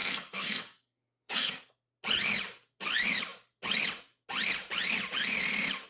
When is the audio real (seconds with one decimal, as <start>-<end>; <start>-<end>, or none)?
1.7-5.9